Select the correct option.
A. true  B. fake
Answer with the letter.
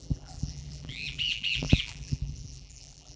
B